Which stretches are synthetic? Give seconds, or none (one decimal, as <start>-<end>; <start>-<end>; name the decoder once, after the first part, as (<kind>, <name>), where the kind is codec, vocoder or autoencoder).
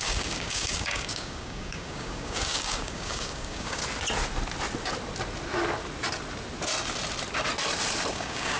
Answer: 0.0-3.8 (codec, DAC); 8.1-8.6